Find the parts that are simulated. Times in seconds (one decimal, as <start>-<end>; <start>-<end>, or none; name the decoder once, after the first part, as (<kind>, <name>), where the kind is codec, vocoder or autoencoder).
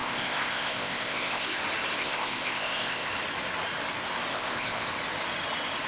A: 0.0-1.6 (codec, ZipCodec); 2.0-3.1; 4.3-4.9